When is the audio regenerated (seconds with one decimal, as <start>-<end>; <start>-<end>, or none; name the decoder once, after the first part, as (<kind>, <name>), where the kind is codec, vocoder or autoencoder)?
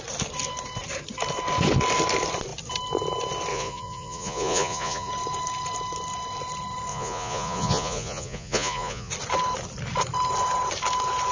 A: 3.5-5.1 (vocoder, Vocos); 6.9-9.1